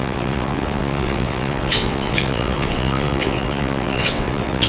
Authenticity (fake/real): fake